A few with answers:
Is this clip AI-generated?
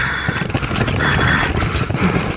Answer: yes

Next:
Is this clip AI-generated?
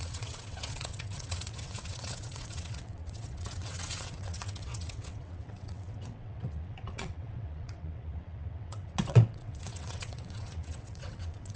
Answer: yes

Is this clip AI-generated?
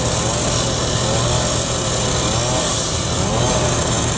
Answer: no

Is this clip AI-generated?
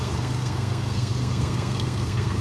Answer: yes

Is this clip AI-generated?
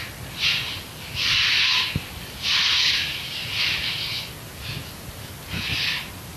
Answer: no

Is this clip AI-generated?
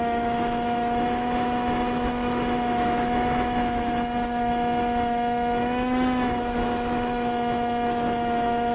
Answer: yes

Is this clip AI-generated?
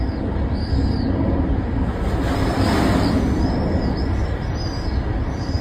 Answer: no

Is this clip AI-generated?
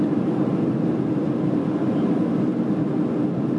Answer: no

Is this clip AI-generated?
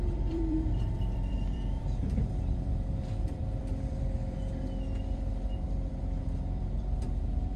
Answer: yes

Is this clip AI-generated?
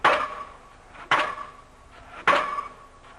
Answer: no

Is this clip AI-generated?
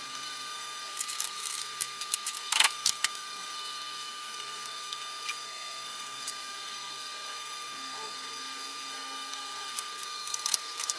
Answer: yes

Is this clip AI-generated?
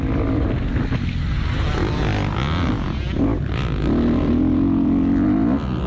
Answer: no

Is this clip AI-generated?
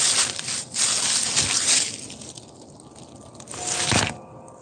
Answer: no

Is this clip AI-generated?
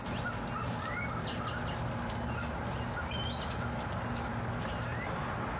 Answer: no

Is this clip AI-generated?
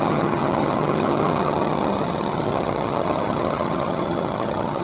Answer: yes